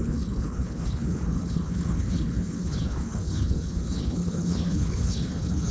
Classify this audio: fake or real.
fake